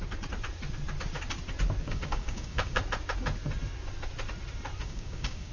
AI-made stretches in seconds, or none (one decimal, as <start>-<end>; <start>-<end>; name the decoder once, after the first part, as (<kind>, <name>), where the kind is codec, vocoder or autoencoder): 1.8-2.8 (codec, DAC); 4.8-5.5